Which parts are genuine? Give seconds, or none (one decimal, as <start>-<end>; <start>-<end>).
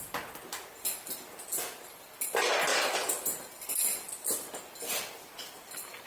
0.0-6.1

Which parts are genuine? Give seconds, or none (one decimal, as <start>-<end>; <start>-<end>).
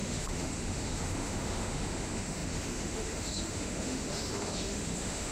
none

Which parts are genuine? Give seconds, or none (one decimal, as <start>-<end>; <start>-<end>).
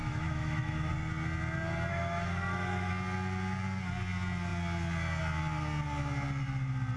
0.9-1.9; 2.9-7.0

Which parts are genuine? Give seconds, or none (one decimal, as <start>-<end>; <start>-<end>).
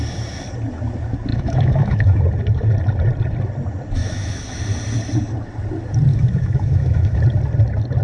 0.0-1.3; 2.2-4.0; 4.6-6.1; 7.2-8.0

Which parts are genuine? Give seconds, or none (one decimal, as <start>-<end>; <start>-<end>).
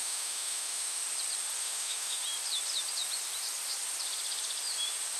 1.0-1.6; 2.2-5.2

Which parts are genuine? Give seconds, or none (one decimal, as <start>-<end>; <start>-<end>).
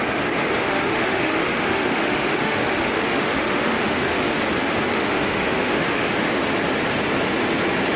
0.0-0.6; 4.4-4.9; 6.3-8.0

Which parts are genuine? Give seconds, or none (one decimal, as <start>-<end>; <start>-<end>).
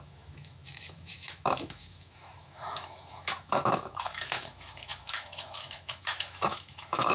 none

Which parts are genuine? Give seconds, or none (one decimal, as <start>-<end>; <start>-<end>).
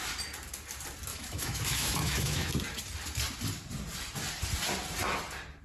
0.0-1.1; 2.5-5.6